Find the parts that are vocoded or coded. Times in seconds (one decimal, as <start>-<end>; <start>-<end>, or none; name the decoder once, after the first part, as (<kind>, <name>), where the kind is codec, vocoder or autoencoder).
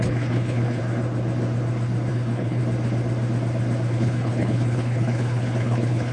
0.0-0.8 (codec, HILCodec); 2.1-2.6; 3.9-6.1